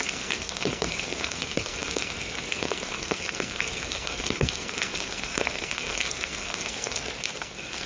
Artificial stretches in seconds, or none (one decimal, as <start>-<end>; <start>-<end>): 0.0-7.9